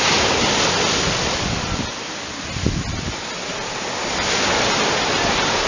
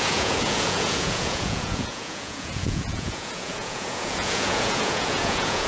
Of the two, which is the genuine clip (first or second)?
first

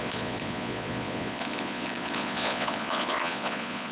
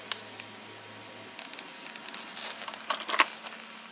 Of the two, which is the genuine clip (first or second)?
second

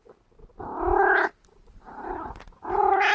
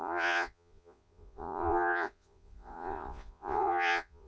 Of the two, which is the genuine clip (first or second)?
first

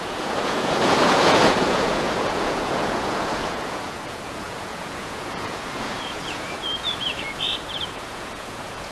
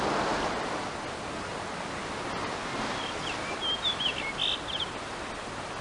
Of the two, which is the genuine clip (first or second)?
second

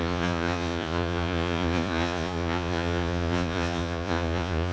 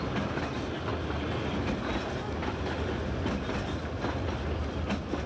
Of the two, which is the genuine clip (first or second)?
second